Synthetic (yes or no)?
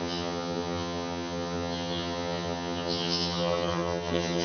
yes